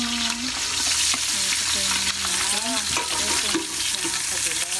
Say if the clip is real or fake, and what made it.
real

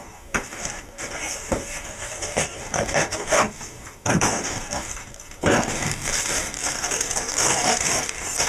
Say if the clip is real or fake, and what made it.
fake, codec, DAC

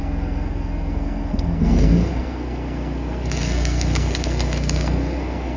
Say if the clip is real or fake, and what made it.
fake, codec, SNAC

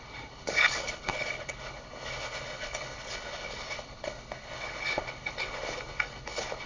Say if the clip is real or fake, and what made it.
fake, codec, HILCodec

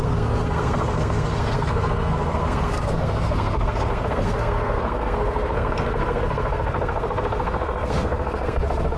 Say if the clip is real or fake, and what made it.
fake, codec, SNAC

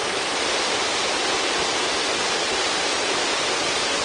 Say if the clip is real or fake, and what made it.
real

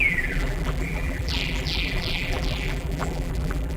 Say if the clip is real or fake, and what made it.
fake, vocoder, BigVGAN v2